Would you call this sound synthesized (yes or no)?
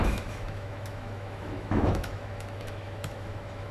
yes